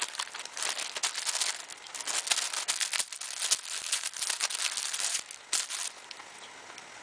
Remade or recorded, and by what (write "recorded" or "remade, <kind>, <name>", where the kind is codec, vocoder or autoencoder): recorded